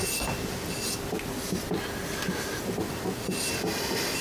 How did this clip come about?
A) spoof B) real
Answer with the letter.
B